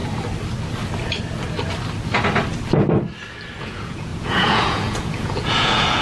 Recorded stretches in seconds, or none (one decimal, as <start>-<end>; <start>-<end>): 0.0-3.6